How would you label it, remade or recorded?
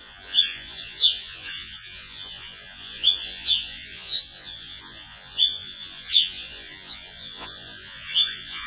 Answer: remade